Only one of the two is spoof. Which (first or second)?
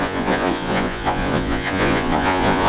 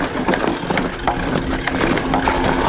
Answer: first